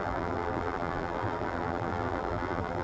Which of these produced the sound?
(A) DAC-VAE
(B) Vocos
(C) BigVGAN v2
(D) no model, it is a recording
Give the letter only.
C